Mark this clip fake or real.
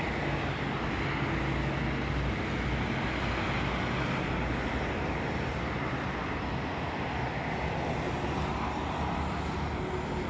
real